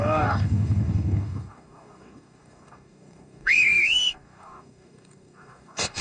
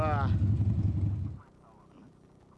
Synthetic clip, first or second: first